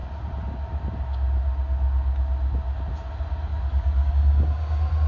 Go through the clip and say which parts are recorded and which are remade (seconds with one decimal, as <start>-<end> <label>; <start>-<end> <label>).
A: 0.0-3.5 recorded; 3.5-4.1 remade; 4.1-5.1 recorded